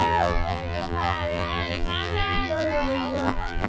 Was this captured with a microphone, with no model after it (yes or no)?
no